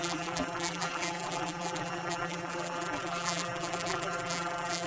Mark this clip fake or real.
fake